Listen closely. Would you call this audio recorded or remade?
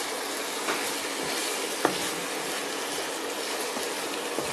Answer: recorded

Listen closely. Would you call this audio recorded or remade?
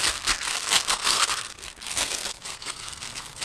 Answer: remade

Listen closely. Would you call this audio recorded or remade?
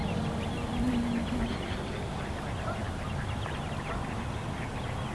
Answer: recorded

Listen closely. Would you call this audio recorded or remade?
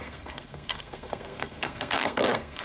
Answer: remade